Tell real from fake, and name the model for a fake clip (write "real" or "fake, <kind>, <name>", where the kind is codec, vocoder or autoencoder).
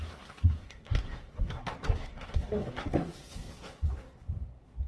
fake, codec, SNAC